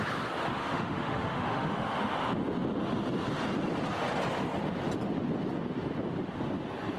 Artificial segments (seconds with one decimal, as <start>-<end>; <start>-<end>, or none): 0.6-2.1